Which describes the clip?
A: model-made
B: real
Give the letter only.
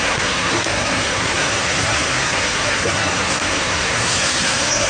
A